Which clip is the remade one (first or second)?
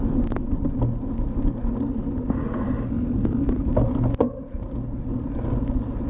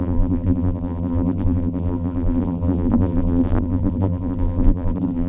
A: second